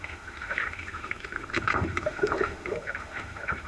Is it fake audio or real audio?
fake